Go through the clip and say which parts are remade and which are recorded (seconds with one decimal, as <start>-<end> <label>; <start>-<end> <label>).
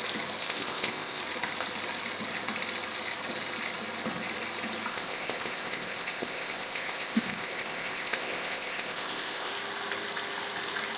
0.0-0.4 recorded; 0.4-1.2 remade; 1.2-4.9 recorded; 4.9-9.5 remade; 9.5-11.0 recorded